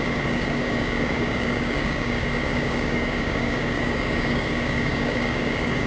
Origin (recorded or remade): remade